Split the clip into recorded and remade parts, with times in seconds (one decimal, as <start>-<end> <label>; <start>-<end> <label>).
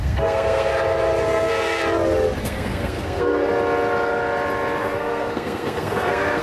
0.0-0.7 remade; 0.7-1.2 recorded; 1.2-1.8 remade; 1.8-2.4 recorded; 2.4-3.5 remade; 3.5-4.8 recorded; 4.8-6.4 remade